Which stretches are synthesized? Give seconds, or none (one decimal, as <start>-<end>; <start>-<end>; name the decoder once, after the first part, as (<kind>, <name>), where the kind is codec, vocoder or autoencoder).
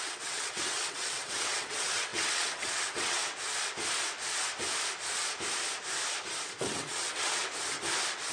0.0-3.2 (vocoder, WaveNeXt); 6.6-7.4